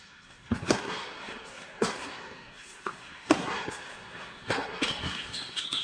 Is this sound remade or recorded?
remade